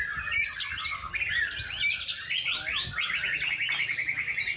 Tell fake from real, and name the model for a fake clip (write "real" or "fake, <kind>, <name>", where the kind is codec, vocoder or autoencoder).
real